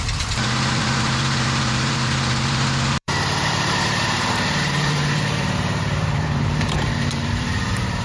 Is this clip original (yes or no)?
no